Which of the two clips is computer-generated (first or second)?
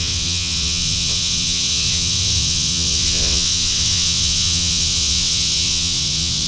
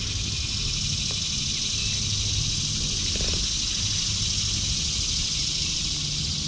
first